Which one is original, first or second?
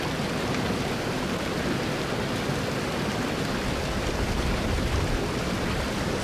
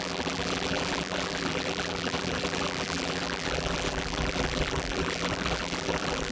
first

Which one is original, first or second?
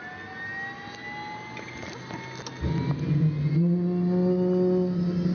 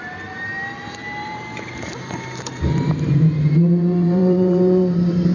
first